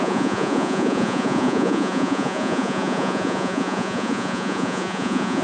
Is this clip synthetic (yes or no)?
yes